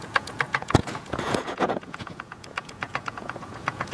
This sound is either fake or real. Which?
fake